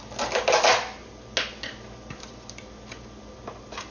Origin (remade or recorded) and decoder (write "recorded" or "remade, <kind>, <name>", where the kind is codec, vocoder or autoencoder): recorded